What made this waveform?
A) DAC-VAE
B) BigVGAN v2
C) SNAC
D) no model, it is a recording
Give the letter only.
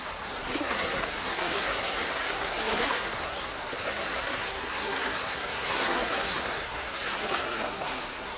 C